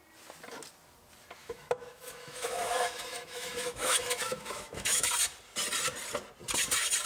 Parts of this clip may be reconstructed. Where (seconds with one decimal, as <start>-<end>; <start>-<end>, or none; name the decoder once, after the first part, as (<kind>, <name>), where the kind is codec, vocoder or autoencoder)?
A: 1.4-5.1 (autoencoder, DAC-VAE)